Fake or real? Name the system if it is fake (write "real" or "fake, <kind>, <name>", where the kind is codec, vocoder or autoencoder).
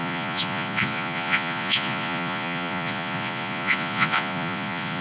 fake, vocoder, Vocos